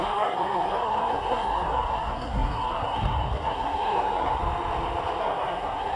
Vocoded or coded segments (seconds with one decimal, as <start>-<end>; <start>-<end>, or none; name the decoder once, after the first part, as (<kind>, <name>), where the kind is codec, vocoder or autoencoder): 0.0-4.4 (codec, SNAC); 5.2-6.0